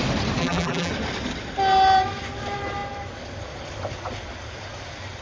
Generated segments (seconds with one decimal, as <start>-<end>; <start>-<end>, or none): 0.4-0.9